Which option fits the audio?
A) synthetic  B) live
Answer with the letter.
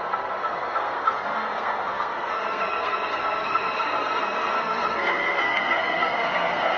A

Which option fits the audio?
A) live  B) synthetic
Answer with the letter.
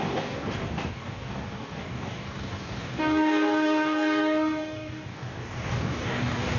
B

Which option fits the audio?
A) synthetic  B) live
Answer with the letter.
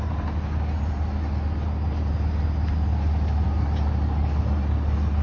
B